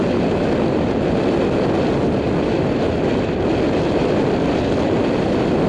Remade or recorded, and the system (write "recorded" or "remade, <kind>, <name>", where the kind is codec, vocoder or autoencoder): recorded